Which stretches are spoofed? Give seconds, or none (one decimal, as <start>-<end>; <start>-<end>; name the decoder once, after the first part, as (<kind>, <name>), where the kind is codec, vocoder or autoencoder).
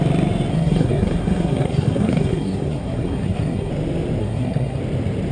0.5-3.7 (codec, SNAC); 4.2-4.8